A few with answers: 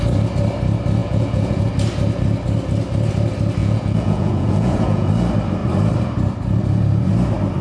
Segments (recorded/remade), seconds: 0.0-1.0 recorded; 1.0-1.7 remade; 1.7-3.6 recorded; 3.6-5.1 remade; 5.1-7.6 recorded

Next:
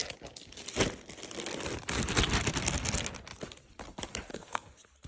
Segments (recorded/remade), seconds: 0.0-4.3 recorded; 4.3-5.1 remade

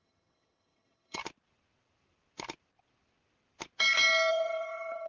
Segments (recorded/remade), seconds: 0.0-1.2 remade; 1.2-4.3 recorded; 4.3-5.1 remade

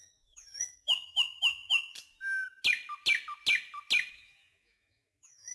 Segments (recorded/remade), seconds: 0.0-1.6 remade; 1.6-4.1 recorded; 4.1-5.5 remade

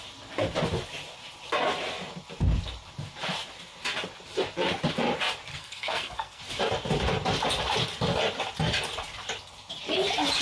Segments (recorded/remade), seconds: 0.0-5.5 recorded; 5.5-6.4 remade; 6.4-10.4 recorded

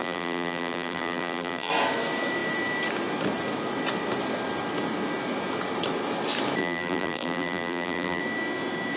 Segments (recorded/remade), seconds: 0.0-1.7 remade; 1.7-6.6 recorded; 6.6-8.2 remade; 8.2-9.0 recorded

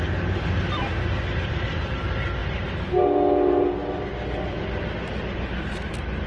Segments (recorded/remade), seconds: 0.0-6.3 recorded

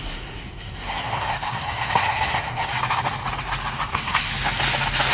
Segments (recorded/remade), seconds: 0.0-2.7 remade; 2.7-3.9 recorded; 3.9-4.3 remade; 4.3-5.1 recorded